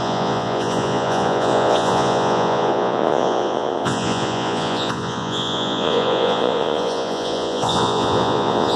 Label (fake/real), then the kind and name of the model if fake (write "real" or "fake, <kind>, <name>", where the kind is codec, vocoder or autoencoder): fake, vocoder, Vocos